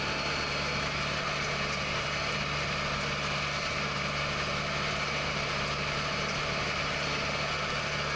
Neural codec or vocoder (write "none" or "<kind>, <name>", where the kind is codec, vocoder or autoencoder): none